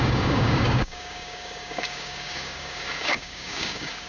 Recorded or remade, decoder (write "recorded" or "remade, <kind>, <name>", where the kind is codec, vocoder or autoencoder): remade, codec, DAC